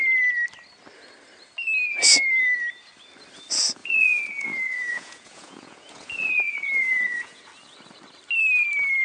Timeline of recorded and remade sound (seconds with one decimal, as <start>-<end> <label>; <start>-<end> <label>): 0.0-3.8 recorded; 3.8-7.4 remade; 7.4-9.0 recorded